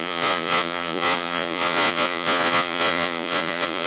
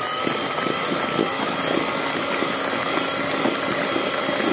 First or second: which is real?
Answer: second